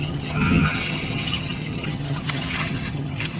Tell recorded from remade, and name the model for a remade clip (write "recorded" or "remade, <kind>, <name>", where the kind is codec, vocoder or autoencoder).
remade, vocoder, HiFi-GAN